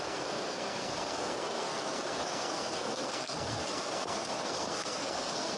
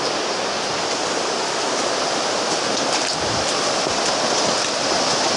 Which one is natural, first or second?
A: second